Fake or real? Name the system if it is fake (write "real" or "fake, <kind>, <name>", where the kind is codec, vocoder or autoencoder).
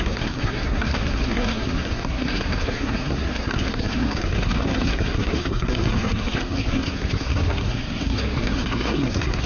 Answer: fake, codec, SNAC